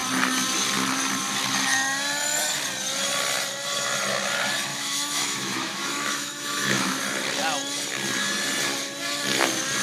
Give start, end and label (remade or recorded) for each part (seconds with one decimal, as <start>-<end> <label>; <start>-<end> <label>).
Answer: 0.0-4.7 recorded; 4.7-7.0 remade; 7.0-9.8 recorded